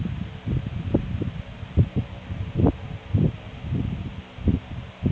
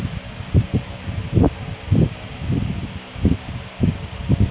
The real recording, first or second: second